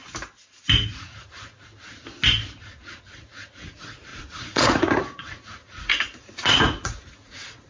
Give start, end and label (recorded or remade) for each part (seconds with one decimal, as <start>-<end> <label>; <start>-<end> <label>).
0.0-1.0 recorded; 1.0-1.7 remade; 1.7-2.6 recorded; 2.6-7.7 remade